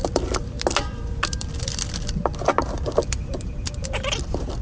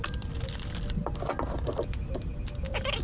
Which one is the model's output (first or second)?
first